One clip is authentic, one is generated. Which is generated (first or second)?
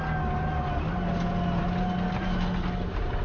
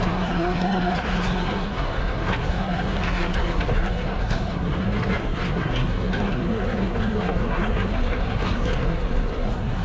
second